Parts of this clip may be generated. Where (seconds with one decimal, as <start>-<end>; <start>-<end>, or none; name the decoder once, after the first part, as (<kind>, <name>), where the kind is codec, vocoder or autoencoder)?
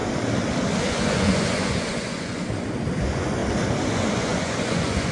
0.8-2.4 (vocoder, Vocos); 3.0-3.4; 3.9-5.1